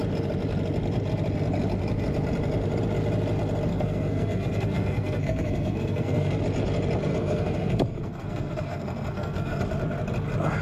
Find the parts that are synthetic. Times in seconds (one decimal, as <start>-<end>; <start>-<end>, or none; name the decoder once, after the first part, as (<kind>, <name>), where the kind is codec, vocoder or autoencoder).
3.7-6.4 (codec, SNAC); 7.1-9.6